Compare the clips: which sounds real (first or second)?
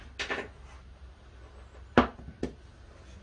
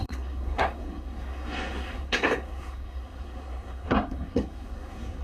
first